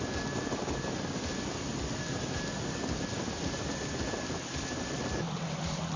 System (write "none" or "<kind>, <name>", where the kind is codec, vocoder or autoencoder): none